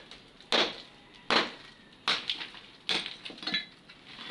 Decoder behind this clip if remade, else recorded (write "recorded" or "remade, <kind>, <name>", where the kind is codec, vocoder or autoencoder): recorded